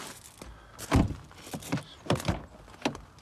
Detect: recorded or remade recorded